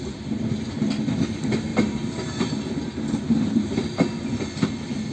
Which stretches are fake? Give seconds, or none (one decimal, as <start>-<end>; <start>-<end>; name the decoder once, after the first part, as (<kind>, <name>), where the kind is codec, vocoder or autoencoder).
none

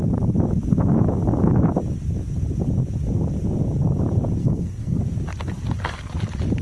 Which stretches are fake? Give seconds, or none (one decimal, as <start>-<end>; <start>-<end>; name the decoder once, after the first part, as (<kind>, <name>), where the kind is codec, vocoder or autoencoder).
4.4-5.0 (codec, SNAC)

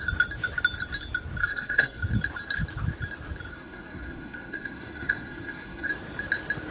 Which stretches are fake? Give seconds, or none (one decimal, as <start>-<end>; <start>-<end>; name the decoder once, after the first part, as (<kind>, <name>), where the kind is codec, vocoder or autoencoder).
1.4-2.0 (codec, SNAC); 3.5-5.9

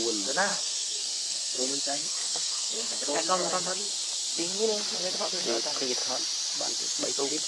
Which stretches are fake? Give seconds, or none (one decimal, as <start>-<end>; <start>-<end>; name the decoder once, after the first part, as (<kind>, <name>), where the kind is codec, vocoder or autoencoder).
0.5-3.5 (codec, SNAC)

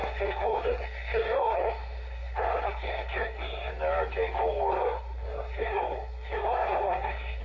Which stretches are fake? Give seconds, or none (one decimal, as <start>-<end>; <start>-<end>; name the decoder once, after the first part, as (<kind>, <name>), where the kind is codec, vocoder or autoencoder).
0.0-3.7 (codec, SNAC); 4.7-7.4

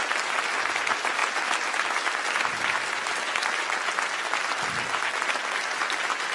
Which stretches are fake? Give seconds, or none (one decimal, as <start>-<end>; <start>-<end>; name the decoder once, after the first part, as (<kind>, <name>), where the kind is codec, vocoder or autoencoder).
none